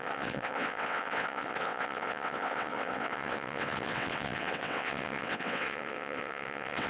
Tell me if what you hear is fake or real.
fake